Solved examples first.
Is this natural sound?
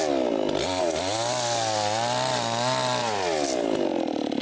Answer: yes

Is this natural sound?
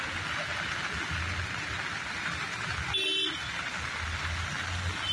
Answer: yes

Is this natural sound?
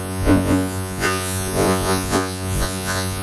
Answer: no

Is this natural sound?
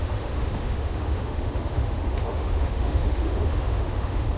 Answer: no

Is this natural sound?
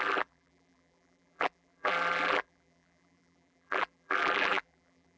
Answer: no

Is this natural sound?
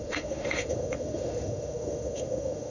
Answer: no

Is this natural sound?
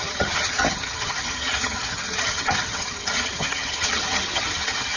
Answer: no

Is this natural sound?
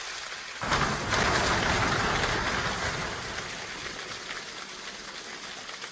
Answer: yes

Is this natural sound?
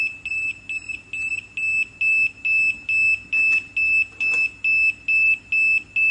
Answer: yes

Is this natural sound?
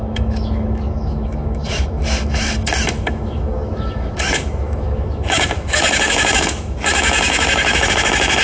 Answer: no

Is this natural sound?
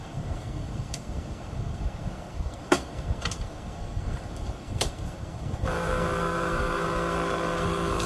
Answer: no